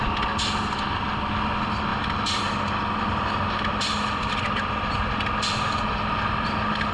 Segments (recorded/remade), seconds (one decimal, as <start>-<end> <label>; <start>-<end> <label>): 0.0-1.9 recorded; 1.9-4.3 remade; 4.3-6.9 recorded